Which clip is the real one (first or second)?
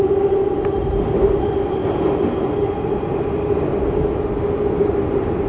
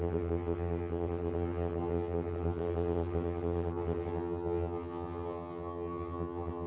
first